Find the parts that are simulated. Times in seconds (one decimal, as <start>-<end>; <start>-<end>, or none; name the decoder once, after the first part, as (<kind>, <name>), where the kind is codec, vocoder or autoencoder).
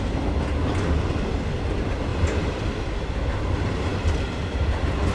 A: none